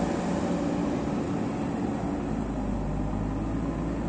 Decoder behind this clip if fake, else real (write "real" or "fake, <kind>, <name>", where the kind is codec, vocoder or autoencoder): real